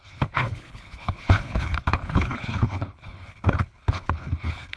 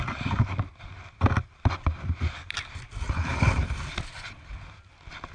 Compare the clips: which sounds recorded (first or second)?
second